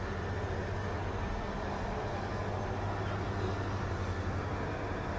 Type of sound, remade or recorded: recorded